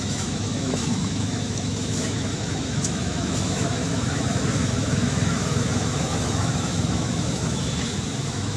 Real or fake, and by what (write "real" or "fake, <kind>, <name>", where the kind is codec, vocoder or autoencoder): fake, autoencoder, DAC-VAE